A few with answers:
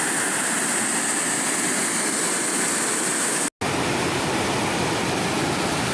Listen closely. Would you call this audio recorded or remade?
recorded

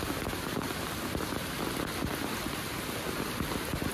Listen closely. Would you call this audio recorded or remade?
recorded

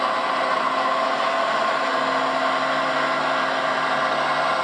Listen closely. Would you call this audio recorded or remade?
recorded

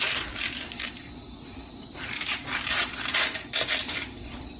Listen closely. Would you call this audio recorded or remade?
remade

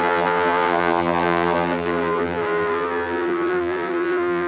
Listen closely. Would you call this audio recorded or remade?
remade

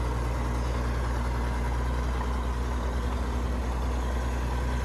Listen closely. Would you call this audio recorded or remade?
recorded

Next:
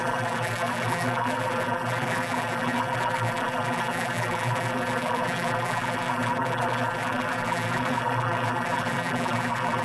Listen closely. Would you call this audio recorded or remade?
remade